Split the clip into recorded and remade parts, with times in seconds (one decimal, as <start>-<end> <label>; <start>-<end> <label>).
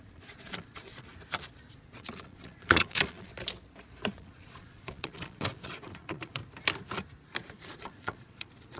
0.0-1.1 remade; 1.1-1.7 recorded; 1.7-3.3 remade; 3.3-4.1 recorded; 4.1-6.4 remade; 6.4-7.5 recorded; 7.5-8.8 remade